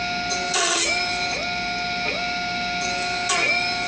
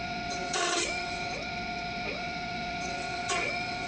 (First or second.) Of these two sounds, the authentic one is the first